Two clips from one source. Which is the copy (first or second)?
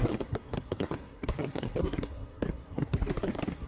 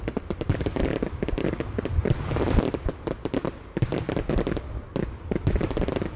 first